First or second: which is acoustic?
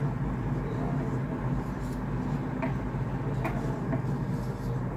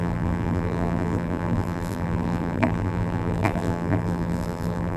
first